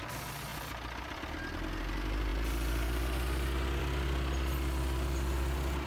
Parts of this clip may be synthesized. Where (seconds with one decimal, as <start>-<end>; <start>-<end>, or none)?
none